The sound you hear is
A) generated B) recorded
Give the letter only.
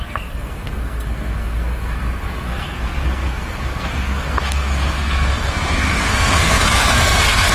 A